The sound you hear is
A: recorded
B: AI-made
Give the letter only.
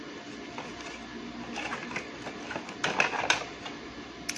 A